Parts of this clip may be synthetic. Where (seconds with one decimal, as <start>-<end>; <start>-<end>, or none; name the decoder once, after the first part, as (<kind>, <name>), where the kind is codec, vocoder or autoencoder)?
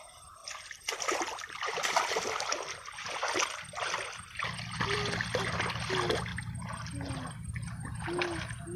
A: none